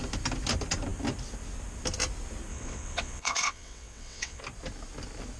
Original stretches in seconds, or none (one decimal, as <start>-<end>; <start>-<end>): 0.0-2.5; 4.4-5.4

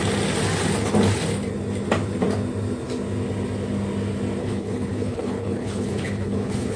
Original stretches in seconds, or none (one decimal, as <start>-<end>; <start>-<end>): 0.0-4.4

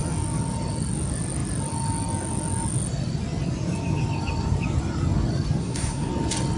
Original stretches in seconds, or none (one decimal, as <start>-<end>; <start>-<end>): 0.0-5.6; 6.1-6.6

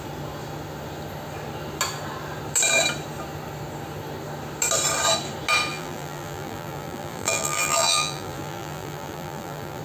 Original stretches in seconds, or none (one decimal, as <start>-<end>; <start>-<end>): 0.0-5.7